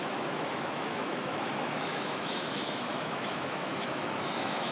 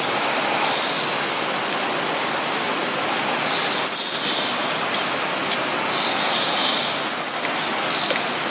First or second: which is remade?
first